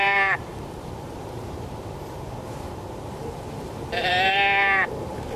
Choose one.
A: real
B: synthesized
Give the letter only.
B